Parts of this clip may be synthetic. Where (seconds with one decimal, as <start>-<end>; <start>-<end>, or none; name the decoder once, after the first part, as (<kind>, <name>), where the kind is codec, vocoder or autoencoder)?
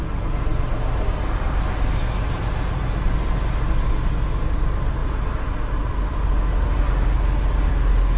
none